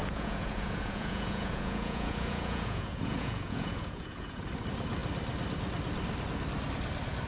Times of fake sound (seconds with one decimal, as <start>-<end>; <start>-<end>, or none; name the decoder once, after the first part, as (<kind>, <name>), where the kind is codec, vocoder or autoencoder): 0.0-4.4 (vocoder, Vocos)